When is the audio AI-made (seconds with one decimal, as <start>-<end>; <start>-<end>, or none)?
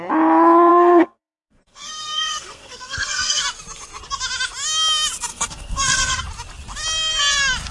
0.7-3.4; 5.3-6.2